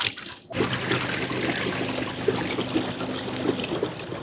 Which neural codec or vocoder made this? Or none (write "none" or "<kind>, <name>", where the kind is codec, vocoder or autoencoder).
none